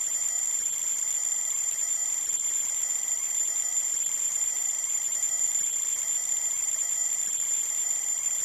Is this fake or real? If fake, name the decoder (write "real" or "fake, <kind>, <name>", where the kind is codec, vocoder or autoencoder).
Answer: fake, vocoder, BigVGAN v2